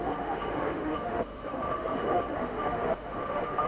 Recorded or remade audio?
remade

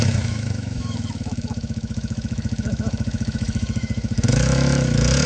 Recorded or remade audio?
remade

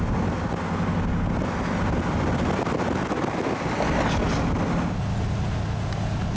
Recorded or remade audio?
recorded